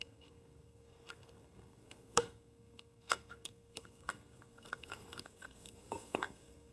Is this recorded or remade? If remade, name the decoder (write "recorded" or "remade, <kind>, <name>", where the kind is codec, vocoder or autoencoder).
remade, codec, SNAC